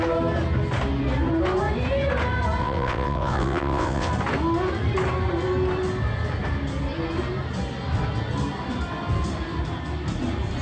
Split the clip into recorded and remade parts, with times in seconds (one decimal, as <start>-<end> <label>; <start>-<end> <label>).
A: 0.0-2.6 recorded; 2.6-4.1 remade; 4.1-10.6 recorded